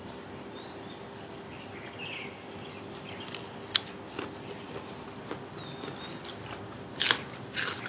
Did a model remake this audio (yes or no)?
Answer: no